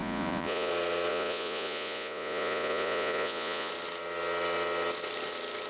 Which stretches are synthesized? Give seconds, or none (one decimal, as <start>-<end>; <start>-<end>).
0.0-0.7; 1.1-3.7